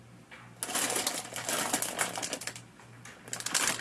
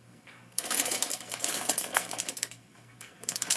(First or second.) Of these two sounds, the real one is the first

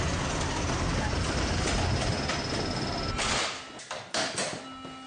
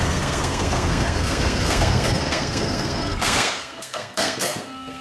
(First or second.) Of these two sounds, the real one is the first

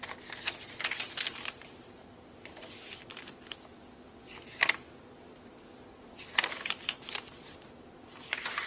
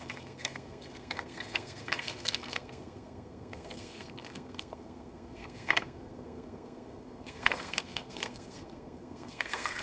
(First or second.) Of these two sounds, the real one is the first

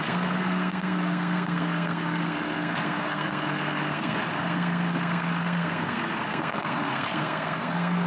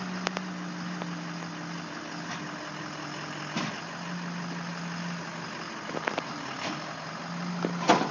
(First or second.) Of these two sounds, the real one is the second